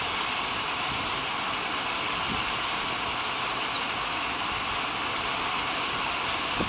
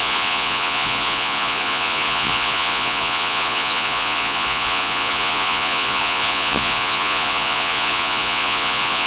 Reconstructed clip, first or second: second